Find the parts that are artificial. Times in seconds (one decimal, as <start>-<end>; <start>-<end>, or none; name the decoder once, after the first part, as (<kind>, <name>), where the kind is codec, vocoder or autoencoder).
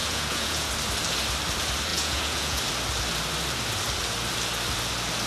0.0-0.7 (vocoder, Vocos); 1.9-2.6